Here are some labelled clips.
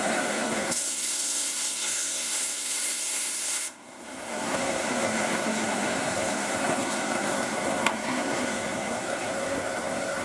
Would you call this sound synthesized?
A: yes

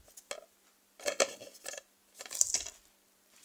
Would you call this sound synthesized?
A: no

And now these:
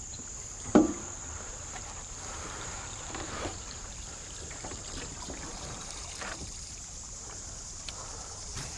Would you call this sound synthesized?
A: yes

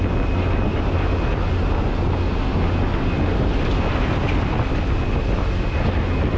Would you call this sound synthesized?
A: no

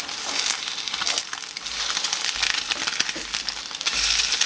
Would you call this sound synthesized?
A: no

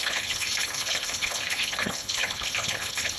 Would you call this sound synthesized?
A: yes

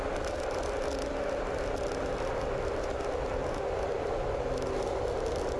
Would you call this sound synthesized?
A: no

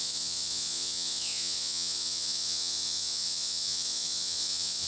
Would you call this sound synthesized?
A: yes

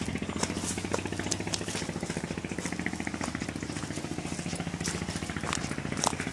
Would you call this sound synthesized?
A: no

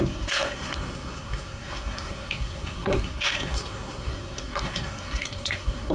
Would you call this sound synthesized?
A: yes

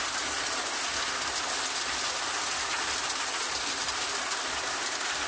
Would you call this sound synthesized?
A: no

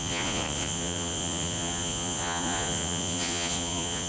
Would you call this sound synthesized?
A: yes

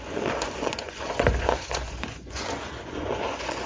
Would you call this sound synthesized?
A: yes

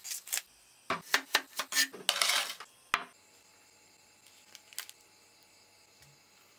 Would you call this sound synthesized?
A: no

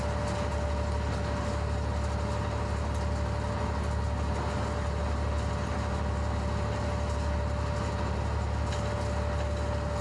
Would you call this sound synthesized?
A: no